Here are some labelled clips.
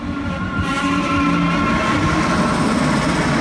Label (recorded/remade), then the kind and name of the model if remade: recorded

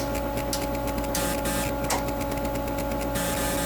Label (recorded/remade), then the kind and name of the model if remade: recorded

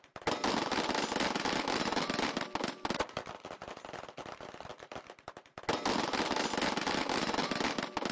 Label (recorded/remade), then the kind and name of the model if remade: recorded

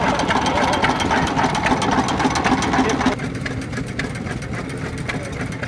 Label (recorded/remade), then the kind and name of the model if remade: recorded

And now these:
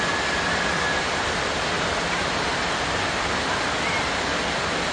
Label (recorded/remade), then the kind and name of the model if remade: recorded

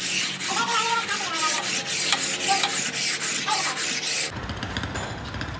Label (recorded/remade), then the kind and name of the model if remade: recorded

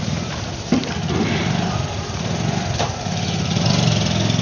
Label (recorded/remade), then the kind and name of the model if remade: remade, vocoder, BigVGAN v2